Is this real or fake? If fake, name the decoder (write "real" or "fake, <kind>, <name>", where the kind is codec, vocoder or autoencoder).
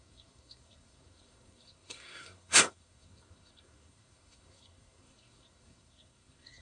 fake, codec, SNAC